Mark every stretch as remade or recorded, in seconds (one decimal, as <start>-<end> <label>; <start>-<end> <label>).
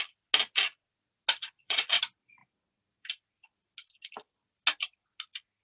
0.0-1.4 recorded; 1.4-2.0 remade; 2.0-5.6 recorded